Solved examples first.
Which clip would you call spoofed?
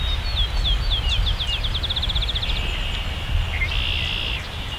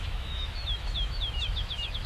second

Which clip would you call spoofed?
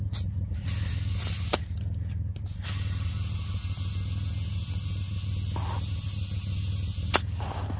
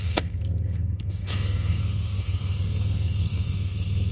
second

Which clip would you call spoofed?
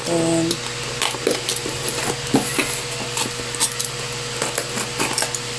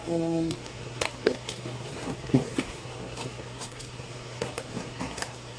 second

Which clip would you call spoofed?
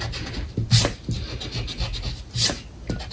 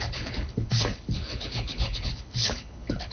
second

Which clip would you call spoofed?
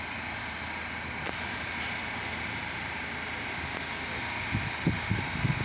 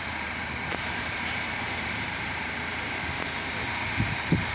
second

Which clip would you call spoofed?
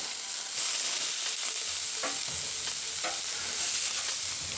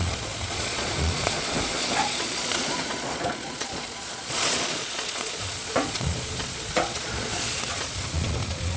second